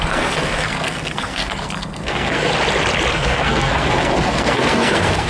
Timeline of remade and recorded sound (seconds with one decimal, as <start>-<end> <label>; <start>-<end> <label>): 0.0-2.5 remade; 2.5-3.1 recorded; 3.1-5.3 remade